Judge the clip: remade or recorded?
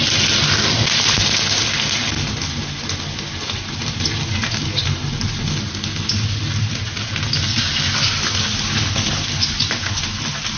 recorded